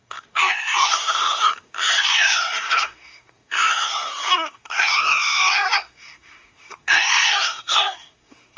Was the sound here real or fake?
fake